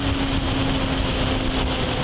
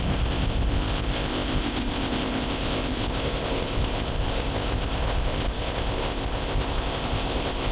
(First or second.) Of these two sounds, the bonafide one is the first